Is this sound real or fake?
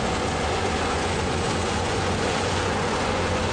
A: fake